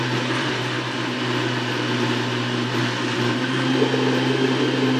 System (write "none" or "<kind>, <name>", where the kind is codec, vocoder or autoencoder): none